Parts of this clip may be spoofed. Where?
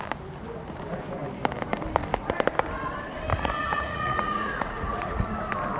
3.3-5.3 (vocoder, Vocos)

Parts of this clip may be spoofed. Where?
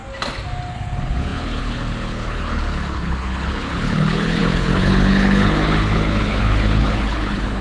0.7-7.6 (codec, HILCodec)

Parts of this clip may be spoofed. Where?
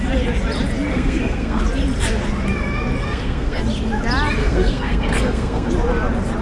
0.9-1.6 (codec, SNAC); 3.0-3.6; 4.4-5.7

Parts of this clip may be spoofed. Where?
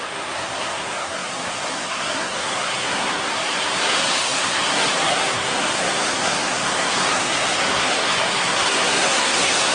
0.0-9.7 (codec, SNAC)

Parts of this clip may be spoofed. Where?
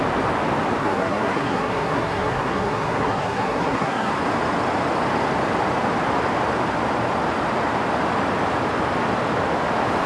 0.8-4.1 (codec, SNAC)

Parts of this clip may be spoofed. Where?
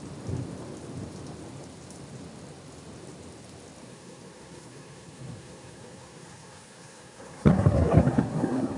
3.8-8.8 (codec, SNAC)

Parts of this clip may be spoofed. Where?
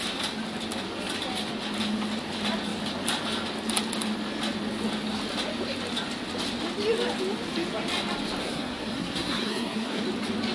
8.4-10.0 (codec, SNAC)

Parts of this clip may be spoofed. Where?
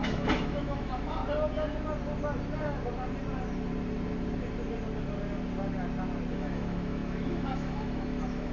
0.0-1.2 (autoencoder, DAC-VAE); 6.3-8.5